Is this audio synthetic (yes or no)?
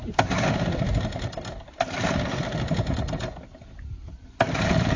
no